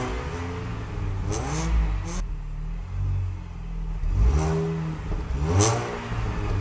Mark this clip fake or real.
real